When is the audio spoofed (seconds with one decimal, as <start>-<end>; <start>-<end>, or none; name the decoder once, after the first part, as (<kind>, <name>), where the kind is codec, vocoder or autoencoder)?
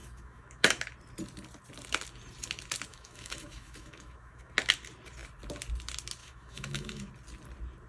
0.0-0.8 (autoencoder, DAC-VAE); 2.9-4.5; 6.2-7.1